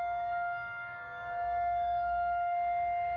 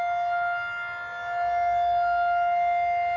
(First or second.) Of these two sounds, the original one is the second